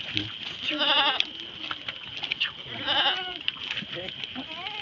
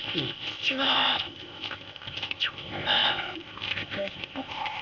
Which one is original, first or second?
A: first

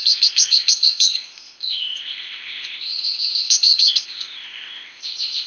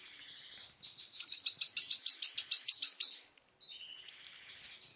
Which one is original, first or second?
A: second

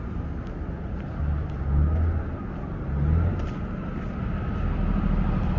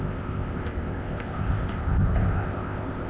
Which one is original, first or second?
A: first